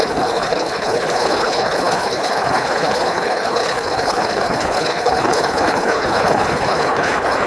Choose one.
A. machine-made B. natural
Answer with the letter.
A